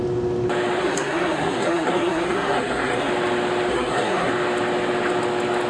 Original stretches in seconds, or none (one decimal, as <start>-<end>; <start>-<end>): 0.0-0.8; 3.1-3.7; 4.3-5.7